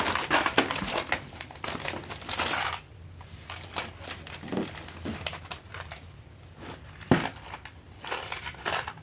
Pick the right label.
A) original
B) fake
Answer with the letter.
A